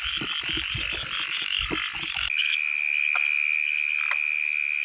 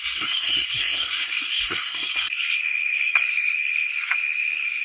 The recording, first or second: first